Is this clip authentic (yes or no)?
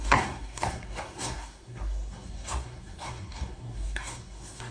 no